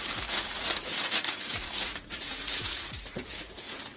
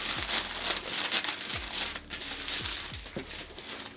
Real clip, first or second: second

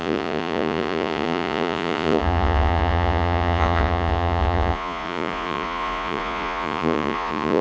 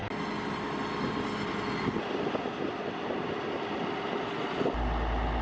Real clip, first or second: second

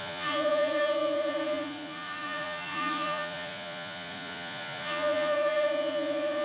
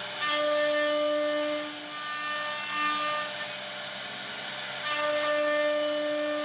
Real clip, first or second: second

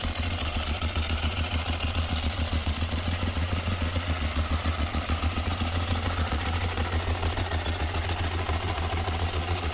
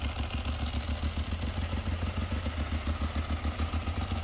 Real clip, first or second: second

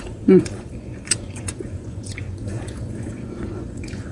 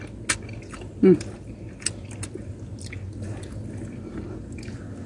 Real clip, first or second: second